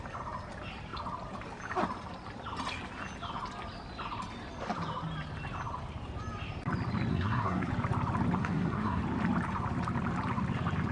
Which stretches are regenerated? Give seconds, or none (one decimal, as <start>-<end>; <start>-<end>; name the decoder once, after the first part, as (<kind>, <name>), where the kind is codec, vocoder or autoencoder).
7.1-7.7 (codec, SNAC); 8.4-9.0